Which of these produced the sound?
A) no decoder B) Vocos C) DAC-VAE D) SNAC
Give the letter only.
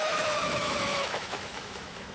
C